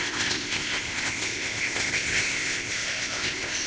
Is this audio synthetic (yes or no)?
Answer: yes